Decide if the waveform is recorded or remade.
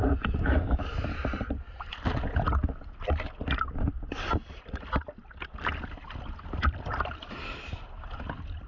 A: recorded